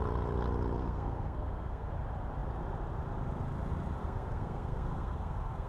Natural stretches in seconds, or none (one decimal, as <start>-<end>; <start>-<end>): 0.0-0.8; 1.9-4.0